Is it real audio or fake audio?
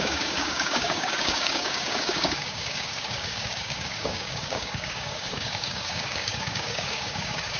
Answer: fake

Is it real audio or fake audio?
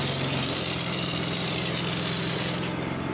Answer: fake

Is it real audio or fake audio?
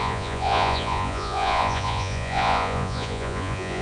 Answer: fake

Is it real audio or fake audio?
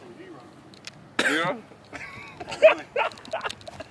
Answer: real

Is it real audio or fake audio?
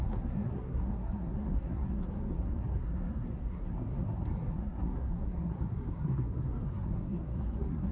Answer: fake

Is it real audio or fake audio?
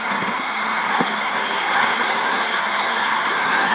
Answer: fake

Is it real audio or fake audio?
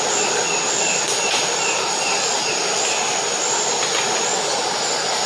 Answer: real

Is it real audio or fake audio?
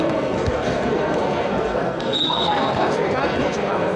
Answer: fake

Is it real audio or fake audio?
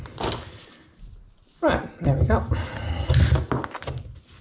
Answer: real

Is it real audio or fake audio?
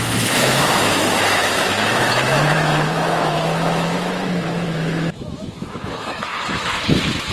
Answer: fake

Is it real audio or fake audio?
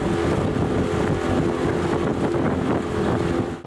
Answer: real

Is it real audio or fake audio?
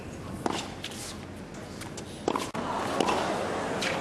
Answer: real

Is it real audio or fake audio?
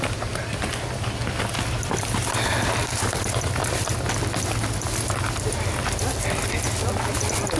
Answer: real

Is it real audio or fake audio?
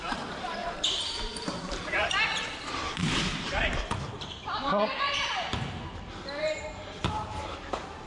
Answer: fake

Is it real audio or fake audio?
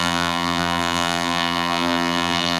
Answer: fake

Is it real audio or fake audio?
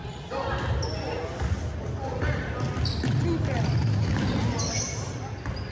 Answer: real